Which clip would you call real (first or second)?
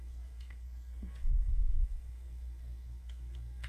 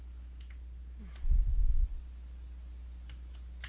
second